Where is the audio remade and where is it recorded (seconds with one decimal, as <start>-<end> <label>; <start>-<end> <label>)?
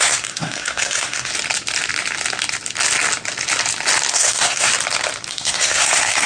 0.0-1.3 remade; 1.3-4.1 recorded; 4.1-4.7 remade; 4.7-5.3 recorded; 5.3-6.3 remade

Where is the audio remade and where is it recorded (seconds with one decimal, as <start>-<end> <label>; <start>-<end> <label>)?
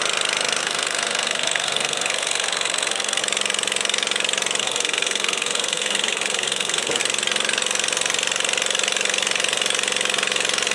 0.0-0.6 recorded; 0.6-3.2 remade; 3.2-4.6 recorded; 4.6-7.0 remade; 7.0-10.7 recorded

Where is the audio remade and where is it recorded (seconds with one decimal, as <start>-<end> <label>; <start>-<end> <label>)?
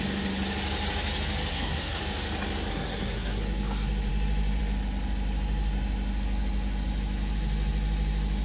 0.0-1.5 recorded; 1.5-2.0 remade; 2.0-2.7 recorded; 2.7-3.4 remade; 3.4-8.4 recorded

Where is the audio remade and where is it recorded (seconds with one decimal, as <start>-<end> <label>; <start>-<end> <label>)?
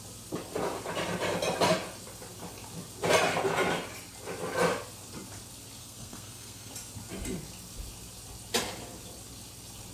0.0-5.8 recorded; 5.8-6.7 remade; 6.7-9.9 recorded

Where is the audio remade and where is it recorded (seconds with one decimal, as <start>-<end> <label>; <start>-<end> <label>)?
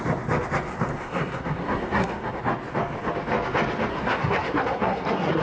0.0-0.7 recorded; 0.7-2.4 remade; 2.4-3.9 recorded; 3.9-5.4 remade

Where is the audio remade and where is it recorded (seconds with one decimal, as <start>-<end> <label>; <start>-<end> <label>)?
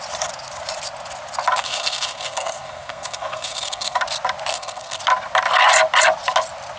0.0-1.6 recorded; 1.6-4.0 remade; 4.0-4.5 recorded; 4.5-5.0 remade; 5.0-6.8 recorded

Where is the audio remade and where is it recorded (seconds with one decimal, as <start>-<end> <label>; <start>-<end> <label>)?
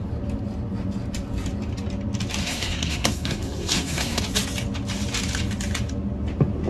0.0-2.4 recorded; 2.4-4.2 remade; 4.2-6.7 recorded